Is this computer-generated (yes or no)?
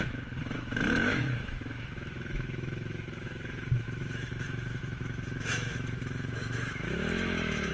yes